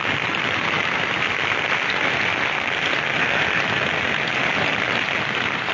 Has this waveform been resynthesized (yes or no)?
no